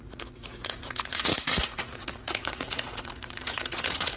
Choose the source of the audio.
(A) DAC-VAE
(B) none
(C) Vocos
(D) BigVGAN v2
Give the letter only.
C